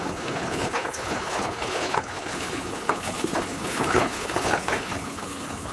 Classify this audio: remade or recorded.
remade